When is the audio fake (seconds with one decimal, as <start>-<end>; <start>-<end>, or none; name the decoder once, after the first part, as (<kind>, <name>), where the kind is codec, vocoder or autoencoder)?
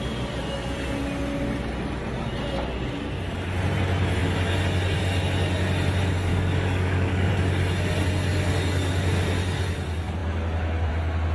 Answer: 6.3-7.3 (codec, DAC)